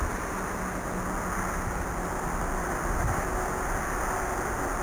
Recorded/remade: recorded